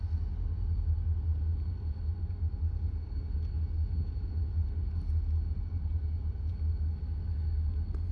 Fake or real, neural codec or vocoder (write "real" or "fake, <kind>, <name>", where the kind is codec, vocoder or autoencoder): real